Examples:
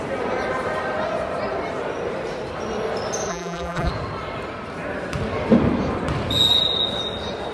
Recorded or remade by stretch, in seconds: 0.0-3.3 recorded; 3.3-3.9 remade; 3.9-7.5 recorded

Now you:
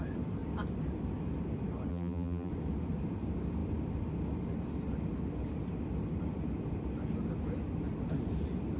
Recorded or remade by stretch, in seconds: 0.0-1.9 recorded; 1.9-2.5 remade; 2.5-8.8 recorded

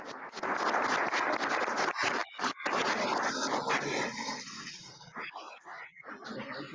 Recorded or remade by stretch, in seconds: 0.0-6.7 recorded

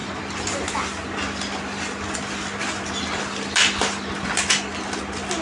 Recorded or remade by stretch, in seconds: 0.0-5.4 recorded